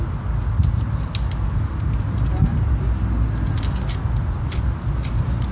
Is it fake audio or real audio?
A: real